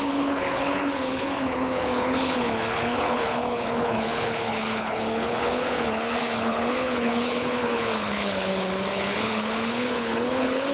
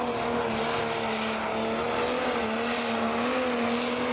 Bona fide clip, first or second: second